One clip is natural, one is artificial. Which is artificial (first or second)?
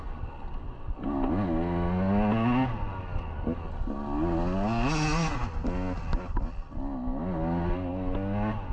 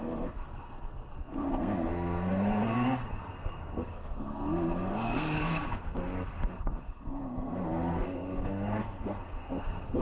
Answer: second